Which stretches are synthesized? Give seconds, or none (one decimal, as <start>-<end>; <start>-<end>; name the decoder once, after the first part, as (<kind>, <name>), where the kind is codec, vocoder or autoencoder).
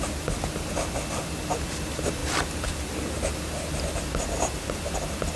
2.2-4.4 (vocoder, BigVGAN v2)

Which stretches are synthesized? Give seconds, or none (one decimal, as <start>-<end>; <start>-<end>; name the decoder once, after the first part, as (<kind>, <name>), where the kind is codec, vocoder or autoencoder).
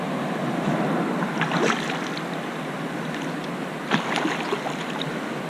none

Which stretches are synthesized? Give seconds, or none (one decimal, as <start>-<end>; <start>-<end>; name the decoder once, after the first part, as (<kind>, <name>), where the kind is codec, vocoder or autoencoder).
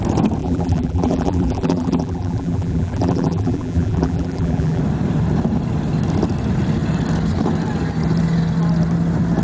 0.4-4.8 (vocoder, BigVGAN v2)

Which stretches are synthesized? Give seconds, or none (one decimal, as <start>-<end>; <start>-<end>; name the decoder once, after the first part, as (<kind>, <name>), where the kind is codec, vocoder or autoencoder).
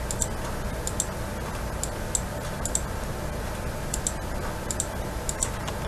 none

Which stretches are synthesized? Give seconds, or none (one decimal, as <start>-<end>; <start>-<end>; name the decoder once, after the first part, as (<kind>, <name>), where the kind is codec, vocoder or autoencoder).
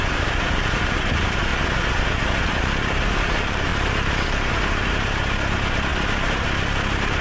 0.0-1.5 (vocoder, BigVGAN v2); 2.6-7.2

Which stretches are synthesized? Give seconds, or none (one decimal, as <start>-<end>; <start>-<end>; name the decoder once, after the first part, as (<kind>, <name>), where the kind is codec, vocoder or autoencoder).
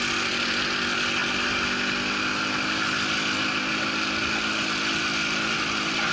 none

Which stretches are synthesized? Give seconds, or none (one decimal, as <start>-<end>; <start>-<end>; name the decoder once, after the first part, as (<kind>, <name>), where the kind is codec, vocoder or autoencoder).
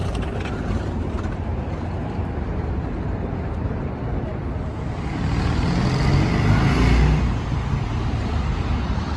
0.0-4.3 (vocoder, BigVGAN v2); 8.1-9.2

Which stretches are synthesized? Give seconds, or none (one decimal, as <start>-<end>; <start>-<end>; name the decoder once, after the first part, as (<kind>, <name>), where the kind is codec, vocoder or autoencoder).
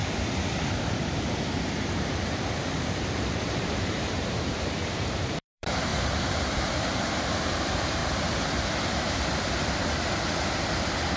2.6-8.0 (vocoder, BigVGAN v2)